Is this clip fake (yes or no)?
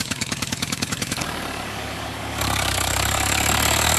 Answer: yes